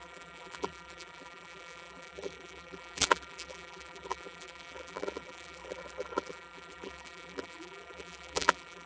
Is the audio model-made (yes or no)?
yes